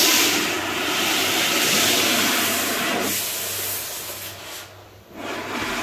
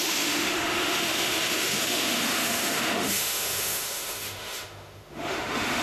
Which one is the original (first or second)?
first